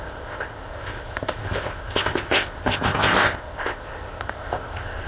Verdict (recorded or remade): remade